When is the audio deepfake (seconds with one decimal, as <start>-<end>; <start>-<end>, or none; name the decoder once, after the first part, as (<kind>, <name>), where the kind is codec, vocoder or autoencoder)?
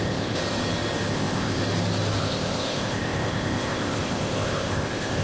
0.0-0.4 (codec, ZipCodec); 1.1-1.6; 2.2-5.2